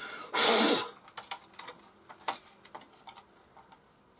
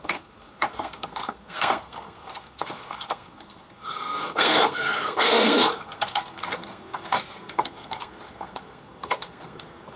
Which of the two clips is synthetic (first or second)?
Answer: second